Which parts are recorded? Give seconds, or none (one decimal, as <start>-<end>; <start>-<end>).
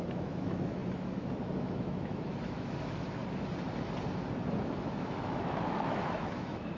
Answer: 3.2-4.6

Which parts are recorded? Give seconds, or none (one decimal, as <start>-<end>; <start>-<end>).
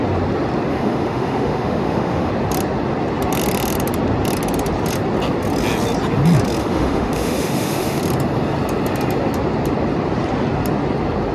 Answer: 0.0-0.7; 2.3-6.6; 8.0-11.3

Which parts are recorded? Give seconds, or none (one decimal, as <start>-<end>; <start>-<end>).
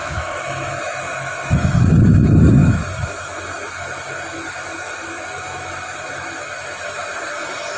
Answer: none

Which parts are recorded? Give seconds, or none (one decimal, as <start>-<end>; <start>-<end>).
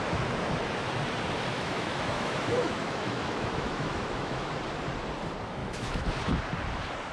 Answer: 0.0-1.5; 4.5-5.6; 6.1-7.1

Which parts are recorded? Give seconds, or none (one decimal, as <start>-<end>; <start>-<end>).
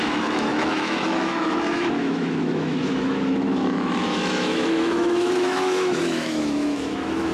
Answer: none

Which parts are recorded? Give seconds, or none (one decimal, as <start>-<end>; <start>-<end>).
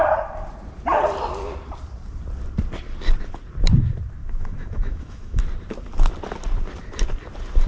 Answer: 0.0-4.2; 5.4-7.7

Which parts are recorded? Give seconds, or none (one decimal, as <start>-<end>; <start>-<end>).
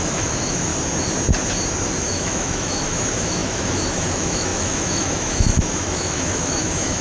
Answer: 0.7-2.0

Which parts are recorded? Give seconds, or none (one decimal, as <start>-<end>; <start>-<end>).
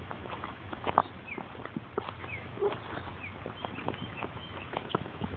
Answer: 1.0-2.2; 2.6-4.1